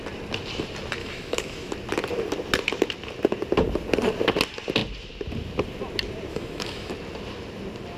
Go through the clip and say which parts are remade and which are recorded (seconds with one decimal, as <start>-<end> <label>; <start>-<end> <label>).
0.0-1.0 recorded; 1.0-1.7 remade; 1.7-6.3 recorded; 6.3-6.9 remade; 6.9-8.0 recorded